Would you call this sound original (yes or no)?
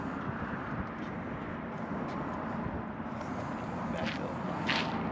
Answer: yes